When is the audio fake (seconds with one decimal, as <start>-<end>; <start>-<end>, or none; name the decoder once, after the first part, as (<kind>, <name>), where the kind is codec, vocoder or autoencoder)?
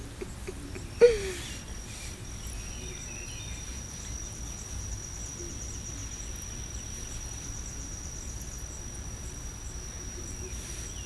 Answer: none